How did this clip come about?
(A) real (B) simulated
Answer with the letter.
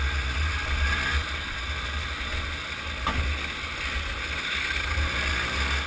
A